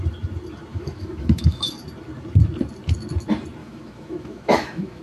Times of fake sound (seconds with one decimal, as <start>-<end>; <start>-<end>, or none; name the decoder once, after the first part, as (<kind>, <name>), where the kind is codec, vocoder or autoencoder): 0.7-1.7 (autoencoder, DAC-VAE); 3.6-5.0